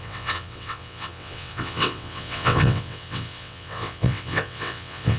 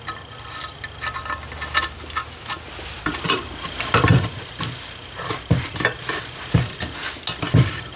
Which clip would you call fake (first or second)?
first